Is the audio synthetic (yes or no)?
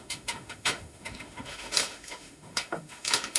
yes